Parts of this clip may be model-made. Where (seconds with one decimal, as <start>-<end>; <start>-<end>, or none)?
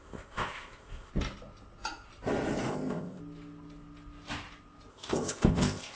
0.0-1.1; 2.7-3.2; 4.9-6.0